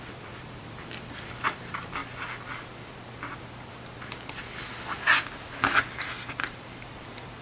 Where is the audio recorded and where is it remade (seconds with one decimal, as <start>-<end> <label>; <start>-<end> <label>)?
0.0-2.0 remade; 2.0-6.4 recorded; 6.4-7.4 remade